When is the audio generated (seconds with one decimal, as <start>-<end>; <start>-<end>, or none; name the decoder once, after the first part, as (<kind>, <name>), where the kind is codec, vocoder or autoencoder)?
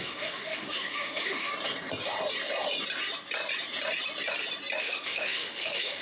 0.0-1.5 (autoencoder, DAC-VAE); 4.8-6.0